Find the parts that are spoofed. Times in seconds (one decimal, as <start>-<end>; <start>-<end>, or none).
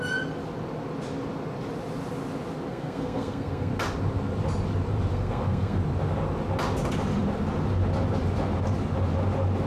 2.7-3.7; 5.1-5.8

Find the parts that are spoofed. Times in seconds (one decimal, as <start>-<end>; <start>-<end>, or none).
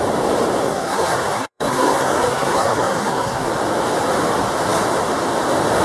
0.6-3.5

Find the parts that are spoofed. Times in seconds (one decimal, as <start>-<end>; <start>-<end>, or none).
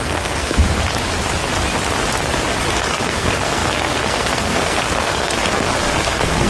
0.0-0.6; 2.7-6.5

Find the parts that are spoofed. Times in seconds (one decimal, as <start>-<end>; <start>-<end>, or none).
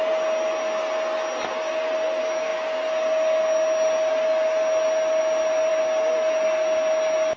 none